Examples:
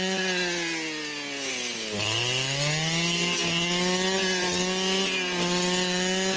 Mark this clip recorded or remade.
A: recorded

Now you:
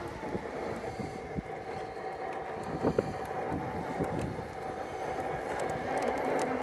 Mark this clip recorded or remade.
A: recorded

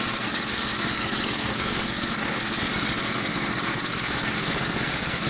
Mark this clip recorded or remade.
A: remade